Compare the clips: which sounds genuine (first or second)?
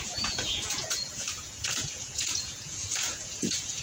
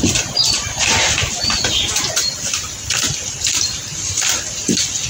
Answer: second